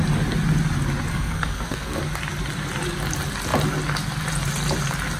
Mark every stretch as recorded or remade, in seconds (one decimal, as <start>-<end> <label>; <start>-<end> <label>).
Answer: 0.0-1.1 recorded; 1.1-2.0 remade; 2.0-5.2 recorded